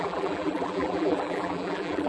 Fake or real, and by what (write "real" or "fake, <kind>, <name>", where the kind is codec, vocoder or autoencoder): fake, vocoder, BigVGAN v2